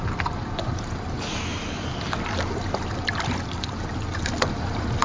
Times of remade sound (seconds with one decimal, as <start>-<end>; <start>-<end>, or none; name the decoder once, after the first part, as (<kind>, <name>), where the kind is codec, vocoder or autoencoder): none